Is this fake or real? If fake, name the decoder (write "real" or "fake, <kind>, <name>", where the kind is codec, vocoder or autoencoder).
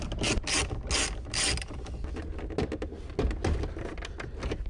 real